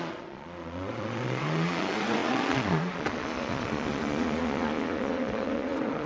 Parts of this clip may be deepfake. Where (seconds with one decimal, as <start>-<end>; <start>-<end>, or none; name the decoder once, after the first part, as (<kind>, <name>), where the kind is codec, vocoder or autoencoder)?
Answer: 0.0-6.1 (vocoder, Vocos)